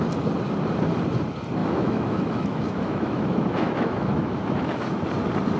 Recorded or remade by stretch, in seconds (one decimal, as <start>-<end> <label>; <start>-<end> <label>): 0.0-1.6 recorded; 1.6-5.0 remade; 5.0-5.6 recorded